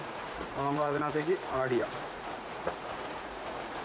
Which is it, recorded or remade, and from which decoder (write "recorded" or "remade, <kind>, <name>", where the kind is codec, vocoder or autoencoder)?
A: remade, vocoder, Vocos